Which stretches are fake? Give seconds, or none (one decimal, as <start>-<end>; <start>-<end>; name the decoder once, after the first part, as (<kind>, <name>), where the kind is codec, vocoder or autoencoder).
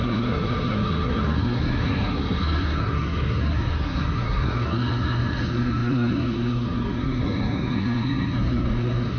0.0-9.2 (codec, SNAC)